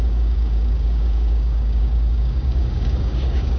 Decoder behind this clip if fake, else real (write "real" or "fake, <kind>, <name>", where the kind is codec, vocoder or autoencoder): fake, codec, DAC